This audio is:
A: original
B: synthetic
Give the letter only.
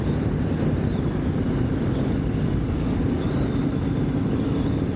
A